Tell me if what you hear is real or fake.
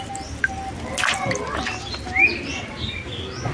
real